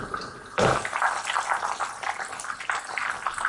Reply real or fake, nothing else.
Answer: real